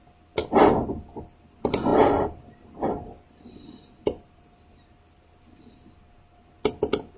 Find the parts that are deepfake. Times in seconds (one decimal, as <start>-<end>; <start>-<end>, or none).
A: none

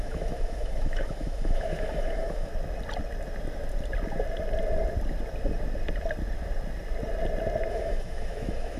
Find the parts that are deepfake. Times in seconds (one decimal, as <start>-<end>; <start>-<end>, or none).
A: 0.0-2.5; 7.7-8.8

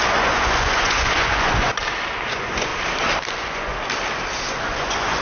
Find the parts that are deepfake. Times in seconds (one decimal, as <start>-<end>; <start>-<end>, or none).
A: 0.0-1.7; 2.3-2.7; 3.3-3.7; 4.5-5.2